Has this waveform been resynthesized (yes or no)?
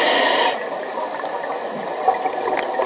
no